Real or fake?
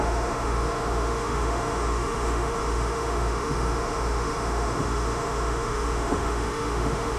fake